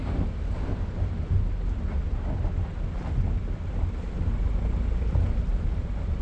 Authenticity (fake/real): real